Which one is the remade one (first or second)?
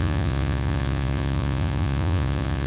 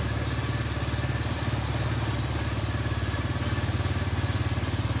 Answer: first